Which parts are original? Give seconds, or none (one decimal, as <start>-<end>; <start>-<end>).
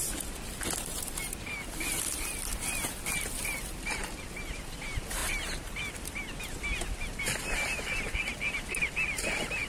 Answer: 0.0-9.7